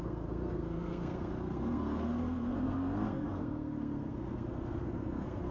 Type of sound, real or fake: fake